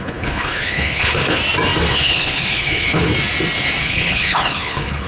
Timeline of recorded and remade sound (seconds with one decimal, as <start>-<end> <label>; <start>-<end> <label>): 0.0-1.4 remade; 1.4-1.9 recorded; 1.9-3.1 remade; 3.1-3.8 recorded; 3.8-5.1 remade